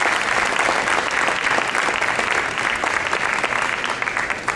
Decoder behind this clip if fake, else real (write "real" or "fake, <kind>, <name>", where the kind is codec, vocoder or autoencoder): real